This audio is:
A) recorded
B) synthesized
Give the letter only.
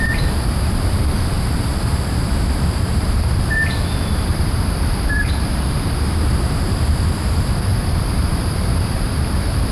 B